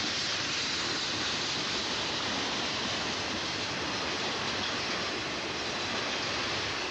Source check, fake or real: real